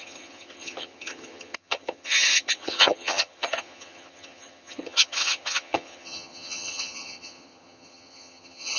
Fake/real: fake